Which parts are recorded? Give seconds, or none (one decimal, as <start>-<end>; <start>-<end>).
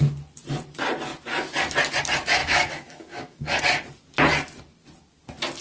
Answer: 0.0-2.4; 3.6-5.6